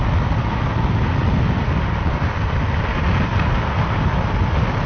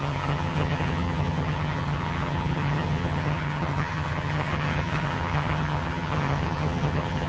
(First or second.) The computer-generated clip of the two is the second